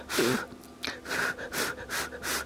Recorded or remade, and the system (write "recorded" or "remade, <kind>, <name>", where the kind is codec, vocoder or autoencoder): recorded